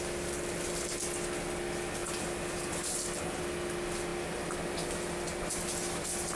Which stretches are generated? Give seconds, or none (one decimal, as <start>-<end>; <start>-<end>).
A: none